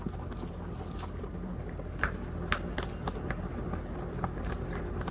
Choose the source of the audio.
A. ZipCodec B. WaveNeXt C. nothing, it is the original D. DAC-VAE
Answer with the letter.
C